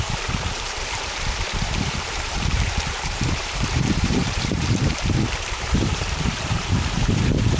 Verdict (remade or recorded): remade